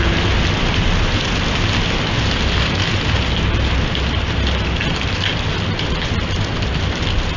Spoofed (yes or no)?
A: no